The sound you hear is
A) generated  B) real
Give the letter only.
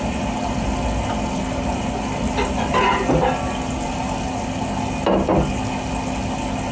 B